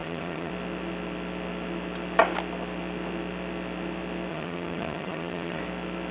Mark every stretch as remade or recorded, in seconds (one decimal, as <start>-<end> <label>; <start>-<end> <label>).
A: 0.0-0.5 remade; 0.5-4.3 recorded; 4.3-5.6 remade; 5.6-6.1 recorded